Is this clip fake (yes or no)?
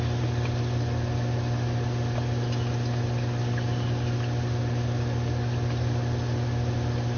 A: no